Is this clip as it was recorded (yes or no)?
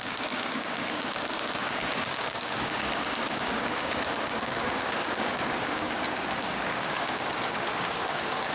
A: no